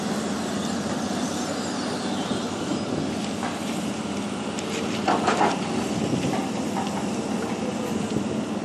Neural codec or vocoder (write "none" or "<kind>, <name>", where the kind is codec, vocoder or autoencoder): none